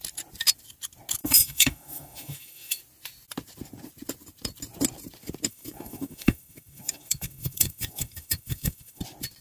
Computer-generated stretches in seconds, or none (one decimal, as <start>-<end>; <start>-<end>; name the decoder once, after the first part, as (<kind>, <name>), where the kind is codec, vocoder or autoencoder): 1.2-2.8 (autoencoder, DAC-VAE); 5.5-9.0